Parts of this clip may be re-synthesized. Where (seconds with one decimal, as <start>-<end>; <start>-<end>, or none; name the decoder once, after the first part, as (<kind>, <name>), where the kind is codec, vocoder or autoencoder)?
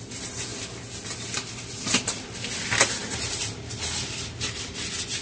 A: none